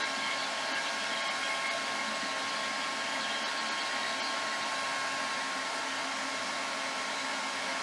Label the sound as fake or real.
real